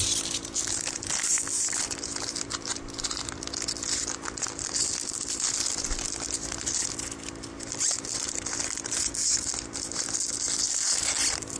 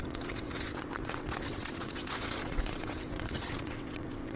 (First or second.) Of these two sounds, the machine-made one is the second